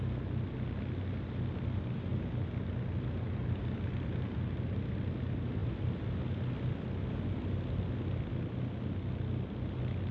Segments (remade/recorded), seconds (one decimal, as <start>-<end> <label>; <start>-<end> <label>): 0.0-10.1 recorded